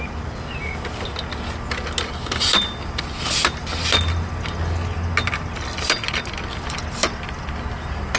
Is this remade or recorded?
recorded